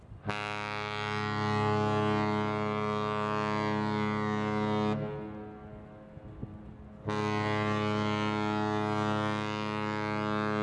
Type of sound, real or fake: real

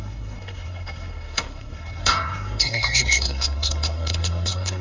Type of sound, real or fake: fake